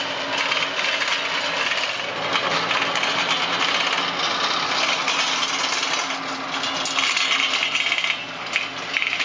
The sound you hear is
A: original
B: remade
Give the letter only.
A